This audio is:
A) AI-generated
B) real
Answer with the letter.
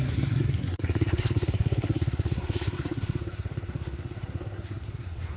A